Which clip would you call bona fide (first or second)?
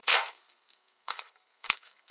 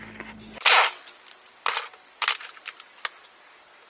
second